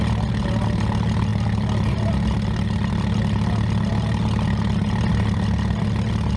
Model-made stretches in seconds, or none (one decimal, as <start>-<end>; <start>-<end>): none